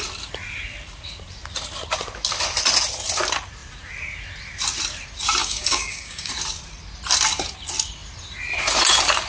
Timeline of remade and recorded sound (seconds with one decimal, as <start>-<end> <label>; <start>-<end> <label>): 0.0-5.4 recorded; 5.4-6.3 remade; 6.3-9.3 recorded